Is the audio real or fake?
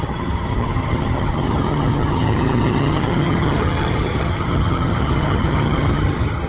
fake